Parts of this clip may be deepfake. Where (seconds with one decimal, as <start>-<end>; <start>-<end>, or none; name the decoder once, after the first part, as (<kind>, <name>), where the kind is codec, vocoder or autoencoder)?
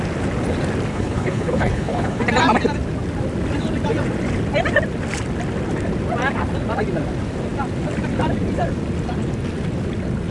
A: 0.9-2.2 (codec, HILCodec)